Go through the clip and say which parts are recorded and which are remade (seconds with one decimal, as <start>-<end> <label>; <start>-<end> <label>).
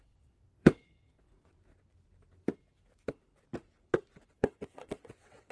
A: 0.0-1.3 remade; 1.3-4.3 recorded; 4.3-5.5 remade